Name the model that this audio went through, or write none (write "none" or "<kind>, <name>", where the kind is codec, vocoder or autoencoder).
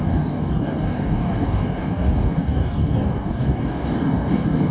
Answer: codec, DAC